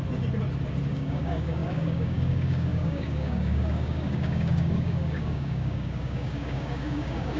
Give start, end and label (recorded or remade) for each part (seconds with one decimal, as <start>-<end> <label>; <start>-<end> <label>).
0.0-0.9 recorded; 0.9-7.4 remade